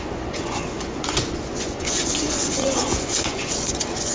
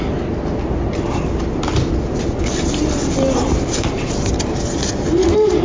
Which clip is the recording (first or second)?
second